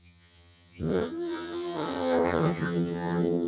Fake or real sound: fake